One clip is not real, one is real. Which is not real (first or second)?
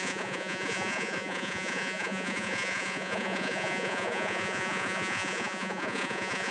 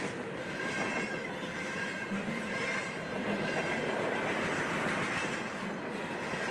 first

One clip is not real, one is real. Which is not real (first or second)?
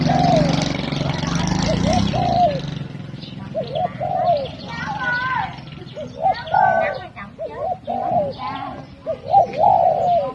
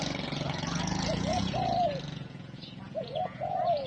second